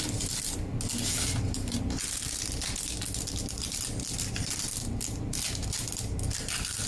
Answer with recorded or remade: recorded